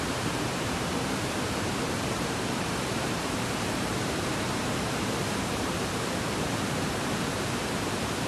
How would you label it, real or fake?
fake